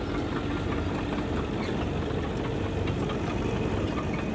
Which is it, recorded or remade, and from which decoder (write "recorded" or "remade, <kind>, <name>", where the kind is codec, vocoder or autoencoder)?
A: recorded